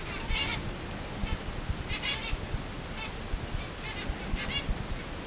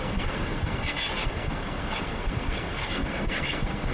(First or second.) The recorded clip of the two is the first